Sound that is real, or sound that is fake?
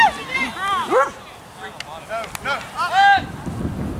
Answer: real